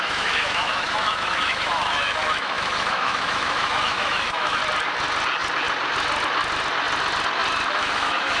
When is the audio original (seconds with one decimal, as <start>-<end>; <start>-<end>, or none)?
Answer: 4.6-7.7